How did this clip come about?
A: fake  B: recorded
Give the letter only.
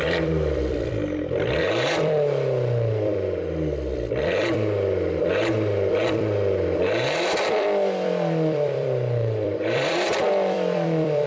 A